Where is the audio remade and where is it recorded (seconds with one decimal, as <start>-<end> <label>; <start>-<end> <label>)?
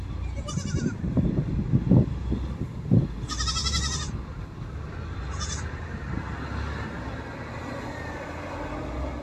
0.0-9.2 recorded